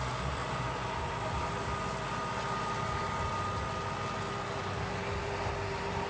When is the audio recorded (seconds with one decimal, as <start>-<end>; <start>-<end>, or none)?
0.0-6.1